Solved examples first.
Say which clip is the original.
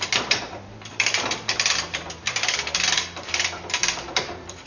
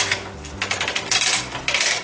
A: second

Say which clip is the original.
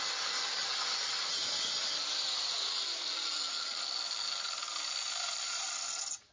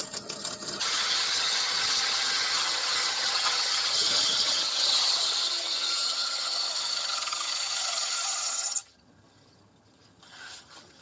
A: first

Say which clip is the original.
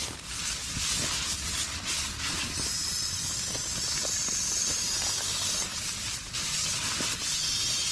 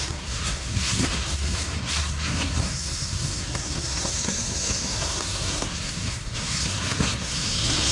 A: first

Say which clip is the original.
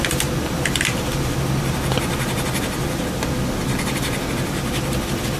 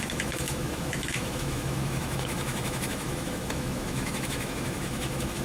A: first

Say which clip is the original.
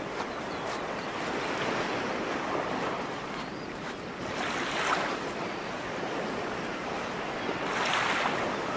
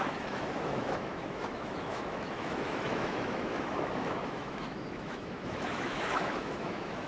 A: first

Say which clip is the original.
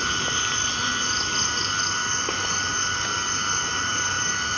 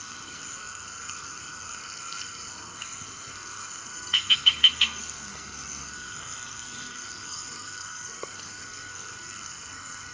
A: first